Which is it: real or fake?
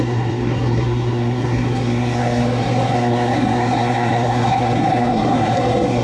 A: fake